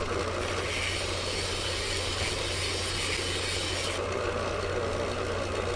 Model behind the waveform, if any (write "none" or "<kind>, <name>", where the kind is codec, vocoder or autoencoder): none